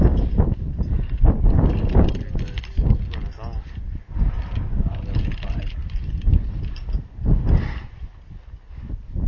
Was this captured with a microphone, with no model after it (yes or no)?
yes